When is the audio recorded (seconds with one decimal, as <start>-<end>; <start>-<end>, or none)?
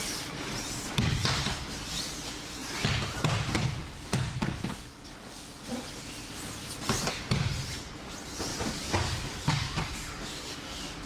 0.0-3.8; 5.6-8.5